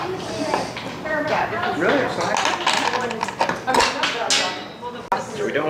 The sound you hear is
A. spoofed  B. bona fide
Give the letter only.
B